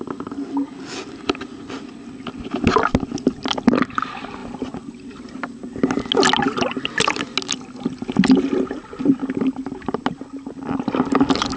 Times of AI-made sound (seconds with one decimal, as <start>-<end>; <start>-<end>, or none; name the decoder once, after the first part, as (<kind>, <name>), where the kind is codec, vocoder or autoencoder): none